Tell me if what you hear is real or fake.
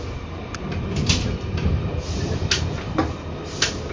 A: real